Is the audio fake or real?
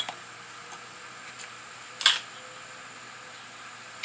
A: real